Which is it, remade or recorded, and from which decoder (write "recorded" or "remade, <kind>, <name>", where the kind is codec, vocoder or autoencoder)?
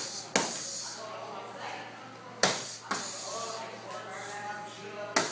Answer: recorded